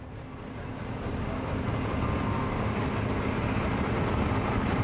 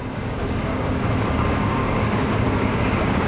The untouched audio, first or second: first